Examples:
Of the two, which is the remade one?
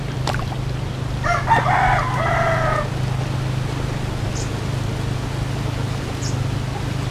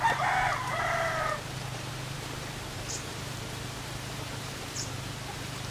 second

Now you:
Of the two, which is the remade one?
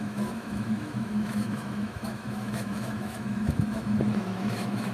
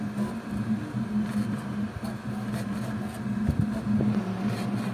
first